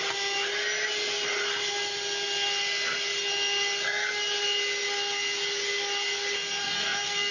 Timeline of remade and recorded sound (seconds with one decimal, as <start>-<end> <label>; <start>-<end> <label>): 0.0-6.6 recorded; 6.6-7.3 remade